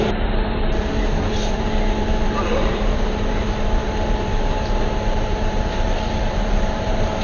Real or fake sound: fake